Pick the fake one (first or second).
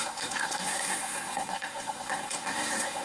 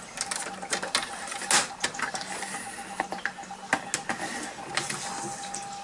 first